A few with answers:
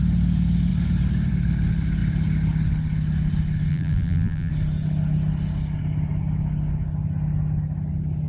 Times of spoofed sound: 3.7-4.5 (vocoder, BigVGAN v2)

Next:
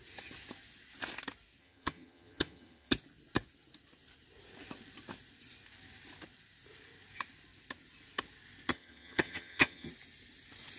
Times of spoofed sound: 1.6-2.9 (vocoder, HiFi-GAN); 8.7-9.9

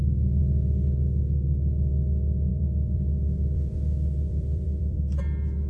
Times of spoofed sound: 2.5-5.2 (vocoder, BigVGAN v2)

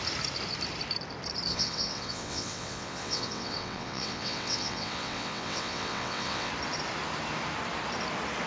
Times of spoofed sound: 1.5-6.5 (vocoder, WaveNeXt)

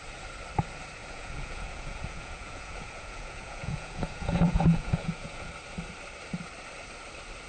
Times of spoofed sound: 1.0-5.5 (vocoder, Vocos)

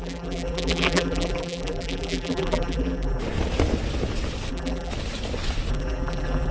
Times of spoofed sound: 0.0-3.2 (vocoder, BigVGAN v2); 4.5-4.9; 5.7-6.5

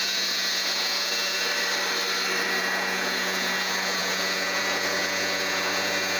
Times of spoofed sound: 0.0-1.5 (vocoder, Vocos); 2.6-6.2

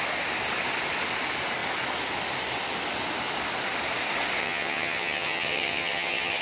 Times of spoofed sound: 4.4-6.4 (vocoder, HiFi-GAN)